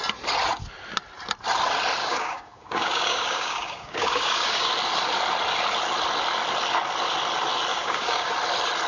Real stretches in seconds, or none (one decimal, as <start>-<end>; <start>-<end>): 0.0-2.0; 4.7-7.7; 8.3-8.9